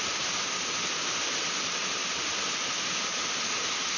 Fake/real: real